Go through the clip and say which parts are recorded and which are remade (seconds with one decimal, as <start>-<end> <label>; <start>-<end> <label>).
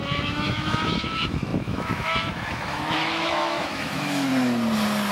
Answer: 0.0-4.3 remade; 4.3-5.1 recorded